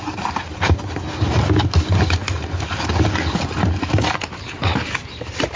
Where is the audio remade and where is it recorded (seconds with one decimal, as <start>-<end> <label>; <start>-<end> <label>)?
0.0-5.6 recorded